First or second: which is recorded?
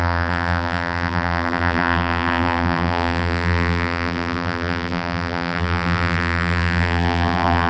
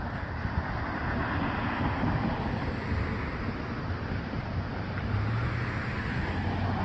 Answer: second